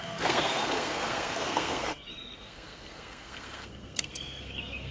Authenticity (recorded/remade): remade